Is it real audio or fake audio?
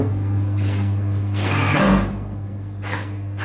fake